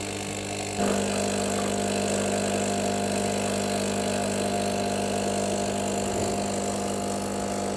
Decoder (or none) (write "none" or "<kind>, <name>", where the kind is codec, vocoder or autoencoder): none